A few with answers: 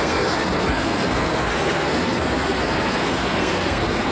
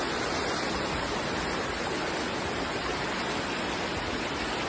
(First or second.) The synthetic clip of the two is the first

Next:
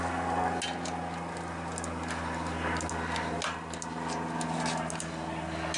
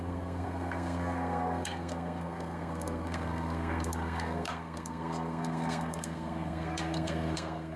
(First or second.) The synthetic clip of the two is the second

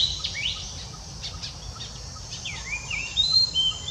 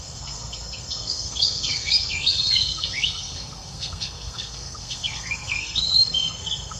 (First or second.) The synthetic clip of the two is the second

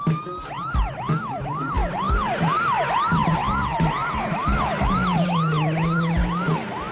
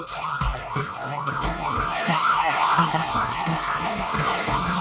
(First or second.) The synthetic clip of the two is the second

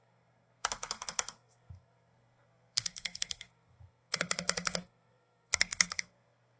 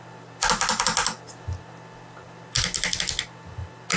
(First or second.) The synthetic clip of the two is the first